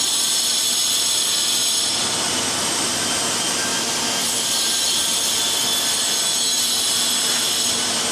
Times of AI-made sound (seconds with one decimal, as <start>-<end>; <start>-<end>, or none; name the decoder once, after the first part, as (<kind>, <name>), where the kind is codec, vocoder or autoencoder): none